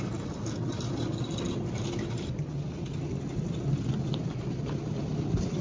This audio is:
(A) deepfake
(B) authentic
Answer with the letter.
B